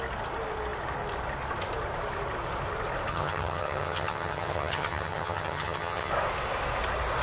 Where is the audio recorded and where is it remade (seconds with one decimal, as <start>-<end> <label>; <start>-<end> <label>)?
0.0-3.1 recorded; 3.1-6.1 remade; 6.1-7.2 recorded

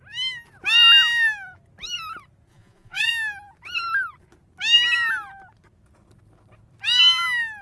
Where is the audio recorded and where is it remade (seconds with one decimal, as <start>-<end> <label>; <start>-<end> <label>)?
0.0-2.5 recorded; 2.5-3.1 remade; 3.1-7.6 recorded

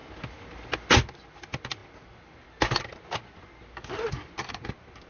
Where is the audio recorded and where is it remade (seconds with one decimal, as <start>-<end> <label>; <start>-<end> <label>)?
0.0-5.1 recorded

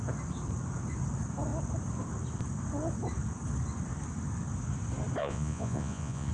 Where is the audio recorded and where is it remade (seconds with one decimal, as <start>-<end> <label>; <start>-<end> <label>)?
0.0-5.2 recorded; 5.2-6.3 remade

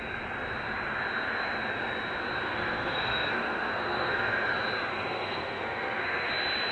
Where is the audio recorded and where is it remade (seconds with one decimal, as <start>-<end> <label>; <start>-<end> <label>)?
0.0-2.5 recorded; 2.5-4.5 remade; 4.5-4.9 recorded; 4.9-6.3 remade; 6.3-6.7 recorded

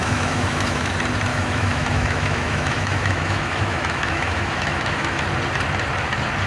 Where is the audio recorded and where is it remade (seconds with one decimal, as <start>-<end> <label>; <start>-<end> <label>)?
0.0-0.9 remade; 0.9-1.3 recorded; 1.3-5.2 remade; 5.2-6.5 recorded

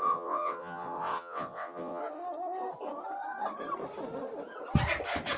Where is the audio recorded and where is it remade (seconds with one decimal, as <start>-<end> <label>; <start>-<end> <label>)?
0.0-2.0 remade; 2.0-5.4 recorded